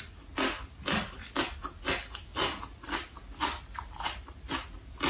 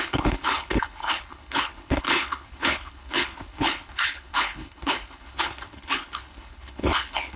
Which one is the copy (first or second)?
second